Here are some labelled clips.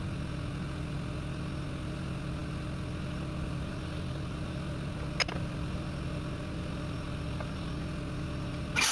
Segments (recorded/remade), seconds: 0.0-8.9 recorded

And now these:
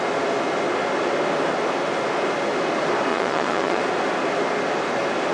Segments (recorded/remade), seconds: 0.0-3.1 recorded; 3.1-3.8 remade; 3.8-5.3 recorded

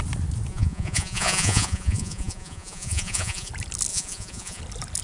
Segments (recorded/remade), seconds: 0.0-0.5 recorded; 0.5-3.5 remade; 3.5-3.9 recorded; 3.9-4.6 remade; 4.6-5.0 recorded

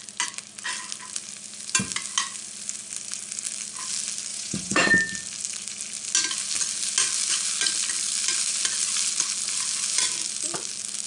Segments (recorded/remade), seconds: 0.0-4.3 recorded; 4.3-4.9 remade; 4.9-11.1 recorded

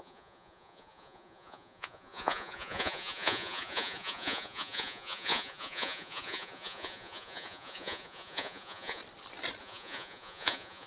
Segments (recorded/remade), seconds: 0.0-9.0 remade; 9.0-9.6 recorded; 9.6-10.9 remade

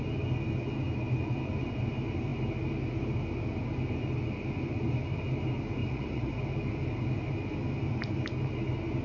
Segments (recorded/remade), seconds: 0.0-5.8 recorded; 5.8-6.3 remade; 6.3-9.0 recorded

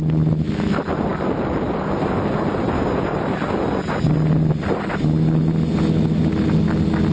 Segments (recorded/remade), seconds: 0.0-7.1 recorded